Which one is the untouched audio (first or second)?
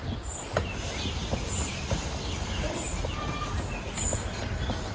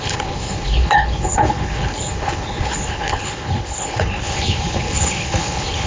first